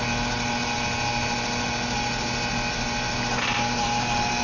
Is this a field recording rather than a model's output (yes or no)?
yes